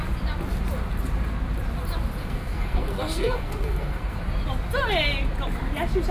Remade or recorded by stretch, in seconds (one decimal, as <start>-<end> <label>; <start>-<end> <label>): 0.0-2.2 recorded; 2.2-4.2 remade; 4.2-6.1 recorded